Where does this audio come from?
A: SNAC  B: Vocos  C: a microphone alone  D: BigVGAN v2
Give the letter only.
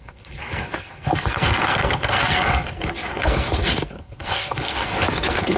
A